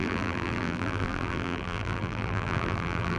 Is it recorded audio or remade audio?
remade